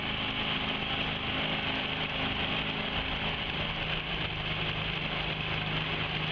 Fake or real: real